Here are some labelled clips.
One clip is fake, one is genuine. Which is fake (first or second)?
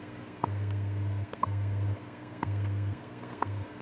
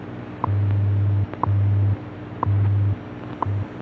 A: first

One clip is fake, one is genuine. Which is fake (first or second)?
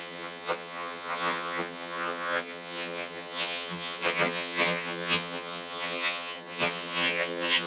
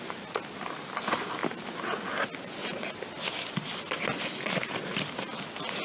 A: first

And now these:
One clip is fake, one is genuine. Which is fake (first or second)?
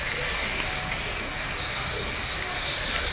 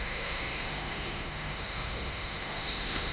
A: second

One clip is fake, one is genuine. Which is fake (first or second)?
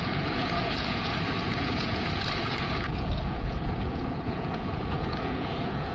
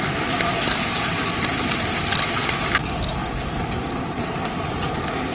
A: first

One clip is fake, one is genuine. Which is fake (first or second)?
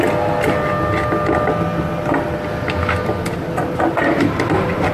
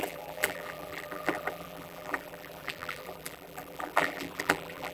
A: second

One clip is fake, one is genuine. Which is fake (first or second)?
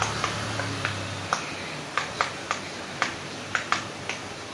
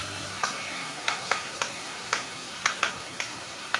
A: second